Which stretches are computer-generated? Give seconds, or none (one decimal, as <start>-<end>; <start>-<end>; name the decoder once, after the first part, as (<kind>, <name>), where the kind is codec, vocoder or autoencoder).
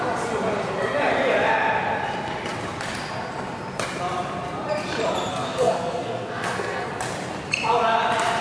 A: 5.3-6.9 (codec, SNAC)